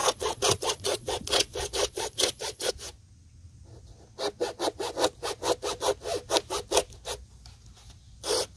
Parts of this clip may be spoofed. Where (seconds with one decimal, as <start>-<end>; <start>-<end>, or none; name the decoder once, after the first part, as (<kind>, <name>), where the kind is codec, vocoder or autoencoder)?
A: 0.0-2.7 (vocoder, Vocos)